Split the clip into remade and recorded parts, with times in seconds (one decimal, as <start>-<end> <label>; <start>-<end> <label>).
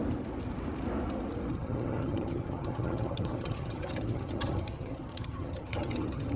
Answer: 0.0-1.5 recorded; 1.5-6.4 remade